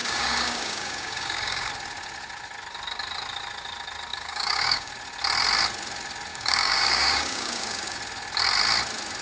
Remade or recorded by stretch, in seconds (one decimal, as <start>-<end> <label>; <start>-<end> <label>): 0.0-1.7 remade; 1.7-4.1 recorded; 4.1-4.9 remade; 4.9-6.3 recorded; 6.3-8.0 remade; 8.0-9.2 recorded